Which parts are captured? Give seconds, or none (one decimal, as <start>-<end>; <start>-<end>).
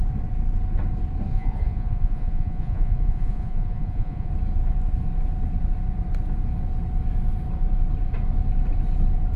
0.0-1.3; 4.3-9.4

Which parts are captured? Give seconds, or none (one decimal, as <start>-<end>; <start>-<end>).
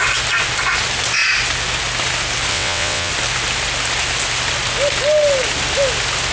0.0-2.5; 3.1-6.3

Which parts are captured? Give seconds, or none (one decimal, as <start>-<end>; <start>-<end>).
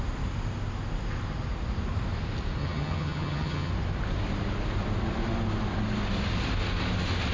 0.0-2.6; 3.7-7.3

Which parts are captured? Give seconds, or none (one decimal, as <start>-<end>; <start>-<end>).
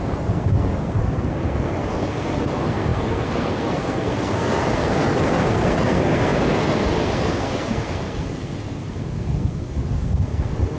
none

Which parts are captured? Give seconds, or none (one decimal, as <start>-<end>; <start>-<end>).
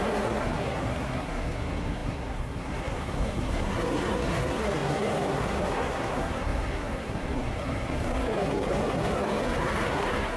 none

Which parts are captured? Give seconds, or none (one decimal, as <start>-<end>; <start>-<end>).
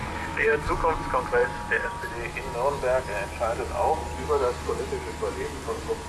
0.7-6.1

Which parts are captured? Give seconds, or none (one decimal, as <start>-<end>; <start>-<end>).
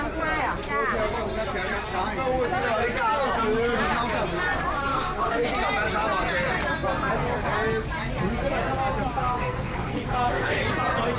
0.0-4.9; 5.5-9.4; 10.6-11.2